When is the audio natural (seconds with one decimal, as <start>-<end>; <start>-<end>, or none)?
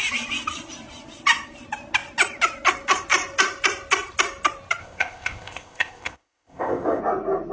0.0-4.8; 7.0-7.5